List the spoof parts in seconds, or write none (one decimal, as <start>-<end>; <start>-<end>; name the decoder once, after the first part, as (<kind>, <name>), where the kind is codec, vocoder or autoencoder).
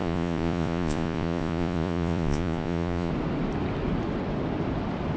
0.0-3.1 (vocoder, Vocos)